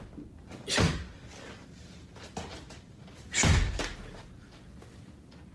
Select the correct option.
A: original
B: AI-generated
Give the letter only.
A